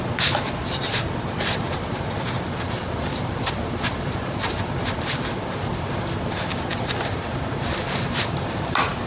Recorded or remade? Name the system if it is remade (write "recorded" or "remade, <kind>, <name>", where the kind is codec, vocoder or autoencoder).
recorded